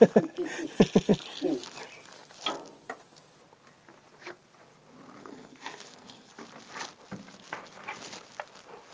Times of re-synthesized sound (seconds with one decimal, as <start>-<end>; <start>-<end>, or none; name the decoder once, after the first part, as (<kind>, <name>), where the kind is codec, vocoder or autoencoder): 5.2-6.3 (codec, SNAC)